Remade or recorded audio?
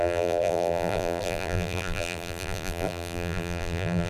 remade